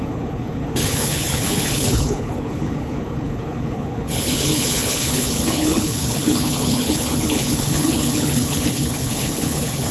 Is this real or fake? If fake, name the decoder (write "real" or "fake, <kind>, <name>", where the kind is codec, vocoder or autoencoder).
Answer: fake, codec, HILCodec